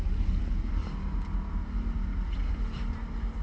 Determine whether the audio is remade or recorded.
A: recorded